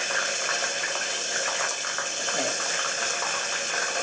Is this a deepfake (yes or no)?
no